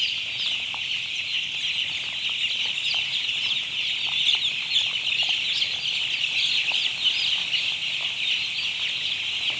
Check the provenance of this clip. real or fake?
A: real